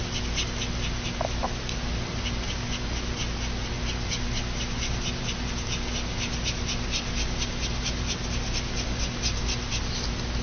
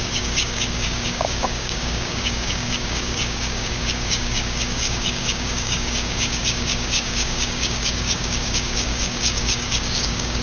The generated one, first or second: second